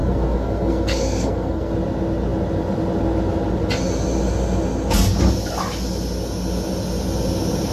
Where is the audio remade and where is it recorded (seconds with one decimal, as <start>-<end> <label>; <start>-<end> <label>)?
0.0-1.7 remade; 1.7-7.7 recorded